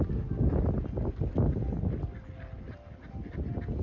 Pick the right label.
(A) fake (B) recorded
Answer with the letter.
B